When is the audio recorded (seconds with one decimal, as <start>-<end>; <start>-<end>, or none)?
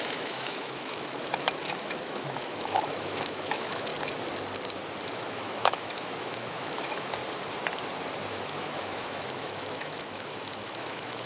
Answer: 3.9-5.0; 7.2-8.3